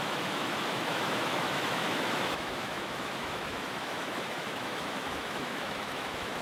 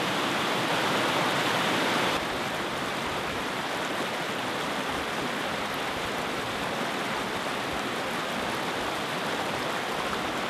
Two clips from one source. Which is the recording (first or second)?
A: second